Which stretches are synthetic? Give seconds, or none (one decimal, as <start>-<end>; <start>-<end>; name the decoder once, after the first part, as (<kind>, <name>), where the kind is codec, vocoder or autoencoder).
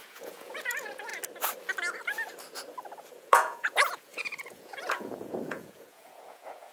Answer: 0.0-1.1 (vocoder, Vocos); 3.1-6.7